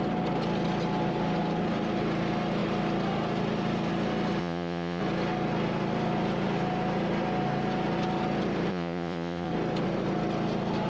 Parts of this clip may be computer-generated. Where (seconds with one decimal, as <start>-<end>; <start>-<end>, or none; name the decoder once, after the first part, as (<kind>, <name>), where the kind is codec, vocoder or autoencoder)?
4.4-5.0 (vocoder, Vocos); 8.7-9.5